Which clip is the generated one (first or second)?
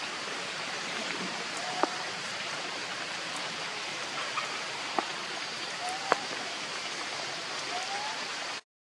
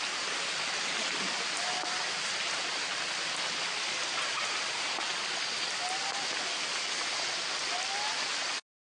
first